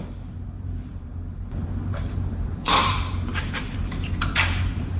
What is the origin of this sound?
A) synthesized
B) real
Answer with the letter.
A